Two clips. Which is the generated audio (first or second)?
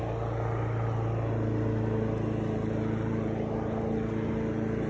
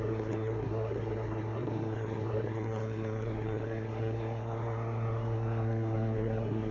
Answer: second